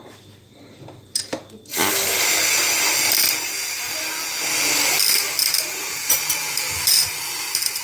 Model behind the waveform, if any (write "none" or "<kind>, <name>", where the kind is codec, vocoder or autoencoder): none